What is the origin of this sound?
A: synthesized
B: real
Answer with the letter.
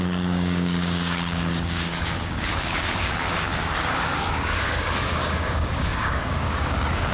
A